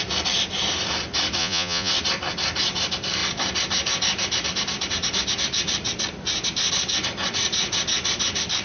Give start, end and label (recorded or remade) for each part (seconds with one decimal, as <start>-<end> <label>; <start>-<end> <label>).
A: 0.0-1.4 recorded; 1.4-1.9 remade; 1.9-8.6 recorded